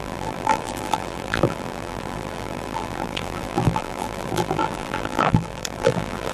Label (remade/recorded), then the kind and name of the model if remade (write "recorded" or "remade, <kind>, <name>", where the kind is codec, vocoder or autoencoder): remade, vocoder, BigVGAN v2